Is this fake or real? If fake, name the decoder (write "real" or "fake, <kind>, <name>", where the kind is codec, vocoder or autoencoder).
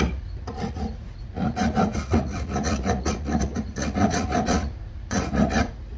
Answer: fake, vocoder, Vocos